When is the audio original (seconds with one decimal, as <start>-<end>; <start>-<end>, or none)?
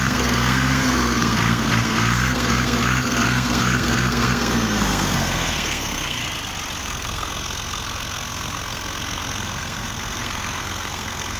6.2-6.8